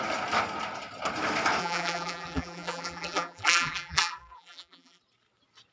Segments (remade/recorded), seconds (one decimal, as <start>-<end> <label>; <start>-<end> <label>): 0.0-1.6 recorded; 1.6-5.0 remade; 5.0-5.7 recorded